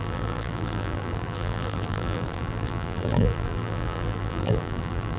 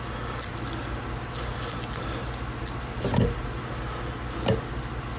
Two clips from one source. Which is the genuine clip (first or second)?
second